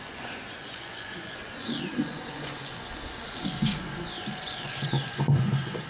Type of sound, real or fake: fake